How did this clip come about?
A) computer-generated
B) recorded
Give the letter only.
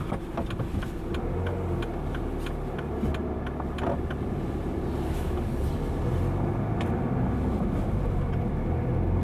B